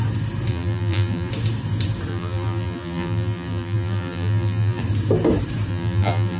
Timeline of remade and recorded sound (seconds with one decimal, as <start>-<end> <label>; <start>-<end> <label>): 0.0-0.5 recorded; 0.5-1.3 remade; 1.3-2.1 recorded; 2.1-4.8 remade; 4.8-5.7 recorded; 5.7-6.4 remade